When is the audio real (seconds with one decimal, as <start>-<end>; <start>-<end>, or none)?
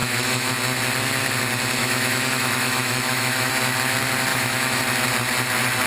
0.5-1.8; 3.5-4.3; 4.8-5.9